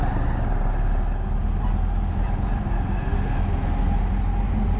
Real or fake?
real